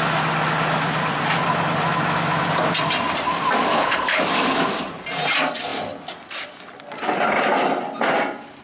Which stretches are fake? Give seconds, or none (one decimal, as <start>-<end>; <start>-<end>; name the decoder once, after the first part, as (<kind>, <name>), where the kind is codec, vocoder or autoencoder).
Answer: 3.7-4.2 (codec, HILCodec)